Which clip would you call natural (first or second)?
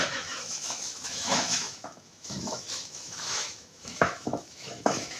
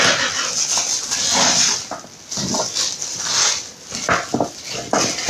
second